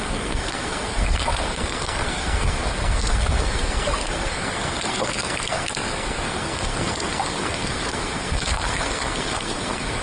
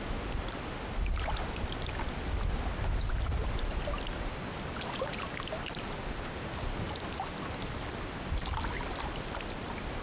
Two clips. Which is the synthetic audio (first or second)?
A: first